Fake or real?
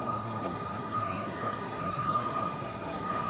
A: fake